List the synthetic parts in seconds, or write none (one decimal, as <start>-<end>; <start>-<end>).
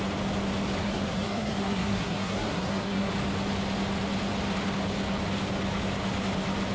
0.8-3.1